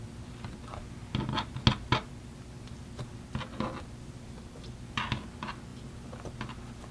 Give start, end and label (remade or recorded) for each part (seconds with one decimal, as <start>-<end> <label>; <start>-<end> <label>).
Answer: 0.0-6.9 recorded